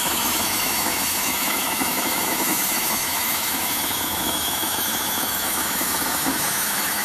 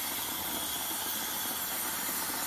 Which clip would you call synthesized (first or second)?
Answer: first